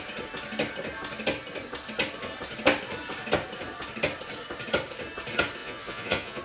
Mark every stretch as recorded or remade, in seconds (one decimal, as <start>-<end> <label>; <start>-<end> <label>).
0.0-5.6 recorded; 5.6-6.4 remade